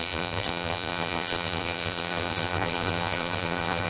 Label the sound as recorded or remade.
remade